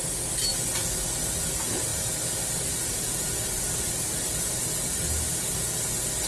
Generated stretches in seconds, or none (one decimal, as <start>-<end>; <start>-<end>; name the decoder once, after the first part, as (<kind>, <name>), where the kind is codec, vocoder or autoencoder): 1.9-4.6 (vocoder, BigVGAN v2)